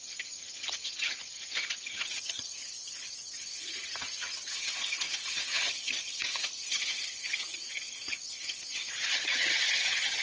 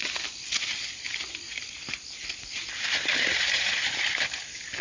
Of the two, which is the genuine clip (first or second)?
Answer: second